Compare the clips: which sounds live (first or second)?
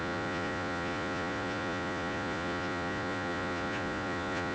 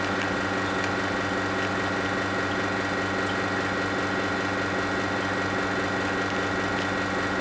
second